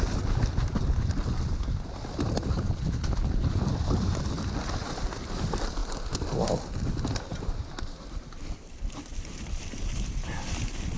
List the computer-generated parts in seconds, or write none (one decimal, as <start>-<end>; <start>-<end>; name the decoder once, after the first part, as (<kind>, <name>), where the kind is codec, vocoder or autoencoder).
none